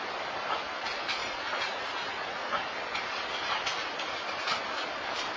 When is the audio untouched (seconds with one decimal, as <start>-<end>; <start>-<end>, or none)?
0.0-1.2; 2.7-5.4